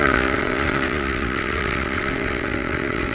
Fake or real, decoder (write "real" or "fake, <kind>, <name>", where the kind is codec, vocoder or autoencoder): fake, vocoder, WaveNeXt